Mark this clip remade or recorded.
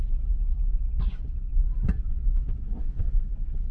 recorded